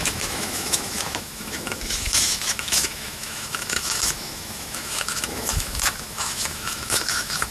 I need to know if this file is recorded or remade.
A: remade